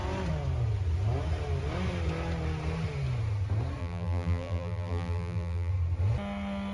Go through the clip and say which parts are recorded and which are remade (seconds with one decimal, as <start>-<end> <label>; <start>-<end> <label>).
0.0-3.8 recorded; 3.8-5.7 remade; 5.7-6.7 recorded